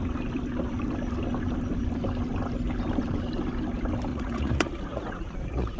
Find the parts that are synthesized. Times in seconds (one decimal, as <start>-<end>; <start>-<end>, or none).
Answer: 4.1-5.8